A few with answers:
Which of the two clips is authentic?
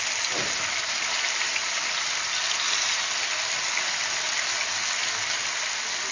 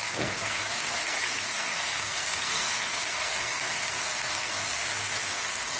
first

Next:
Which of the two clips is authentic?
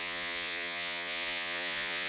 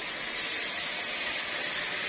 second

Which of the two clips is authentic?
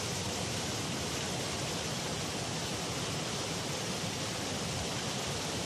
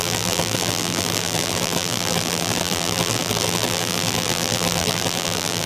first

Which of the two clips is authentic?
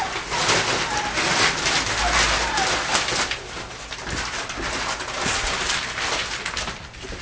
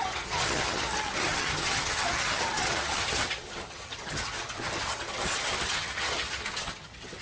first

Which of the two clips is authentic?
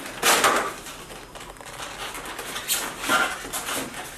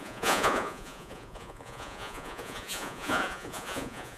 first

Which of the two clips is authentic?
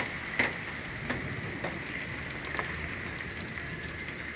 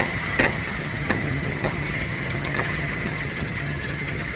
first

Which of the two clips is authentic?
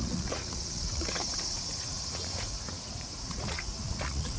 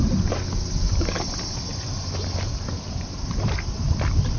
second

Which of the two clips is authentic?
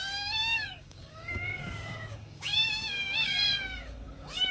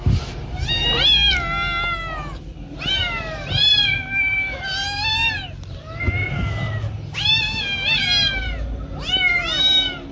second